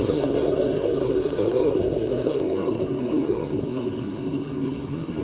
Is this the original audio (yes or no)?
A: no